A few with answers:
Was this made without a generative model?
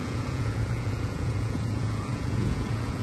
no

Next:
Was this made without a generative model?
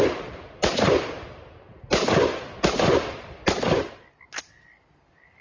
yes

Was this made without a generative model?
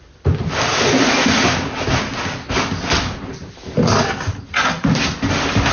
yes